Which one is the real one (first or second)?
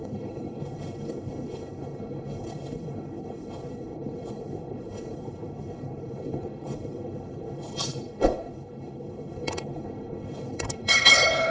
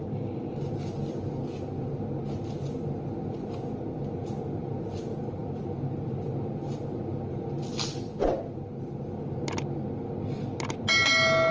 second